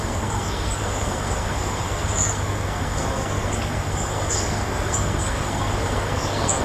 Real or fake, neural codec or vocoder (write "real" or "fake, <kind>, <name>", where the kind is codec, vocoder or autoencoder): fake, codec, SNAC